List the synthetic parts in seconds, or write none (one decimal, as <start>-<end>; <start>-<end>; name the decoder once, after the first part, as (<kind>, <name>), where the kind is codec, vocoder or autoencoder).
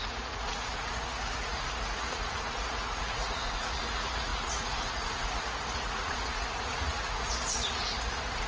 0.0-8.5 (vocoder, Vocos)